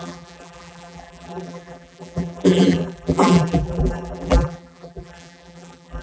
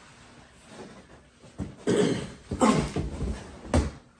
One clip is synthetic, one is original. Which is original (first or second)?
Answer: second